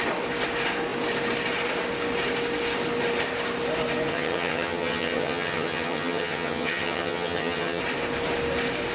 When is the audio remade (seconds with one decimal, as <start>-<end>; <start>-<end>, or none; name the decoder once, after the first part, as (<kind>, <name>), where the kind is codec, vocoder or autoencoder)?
4.1-7.8 (vocoder, HiFi-GAN)